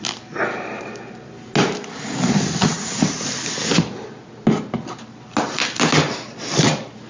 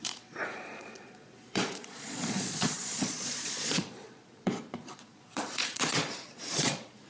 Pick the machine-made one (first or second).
second